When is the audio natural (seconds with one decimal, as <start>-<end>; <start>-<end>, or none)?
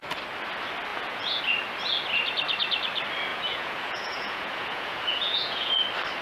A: 0.0-0.9; 1.4-3.3; 5.7-6.2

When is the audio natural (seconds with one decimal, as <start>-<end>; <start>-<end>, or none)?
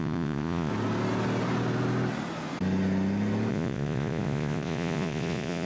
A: 0.7-3.5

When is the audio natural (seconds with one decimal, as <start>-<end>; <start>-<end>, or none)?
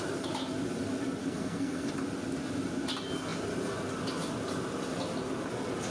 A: 0.0-1.2; 1.9-5.9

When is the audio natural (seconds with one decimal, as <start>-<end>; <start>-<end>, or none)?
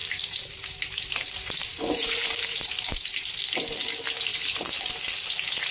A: 3.4-4.3; 4.9-5.7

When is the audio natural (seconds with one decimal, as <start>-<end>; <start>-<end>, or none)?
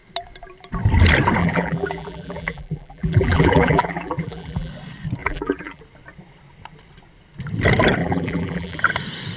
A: 0.0-1.4; 4.7-5.2; 5.8-8.0; 8.8-9.4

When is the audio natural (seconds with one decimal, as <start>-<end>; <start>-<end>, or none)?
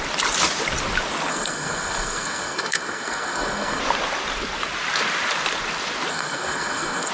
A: 0.0-1.3; 3.8-6.1